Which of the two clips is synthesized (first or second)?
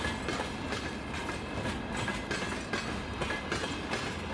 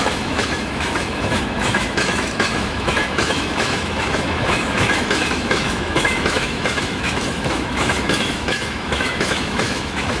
second